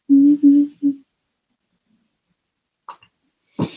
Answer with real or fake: real